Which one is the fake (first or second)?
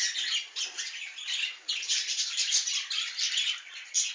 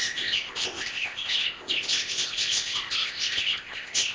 second